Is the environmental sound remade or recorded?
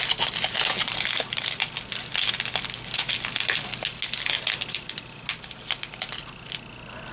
recorded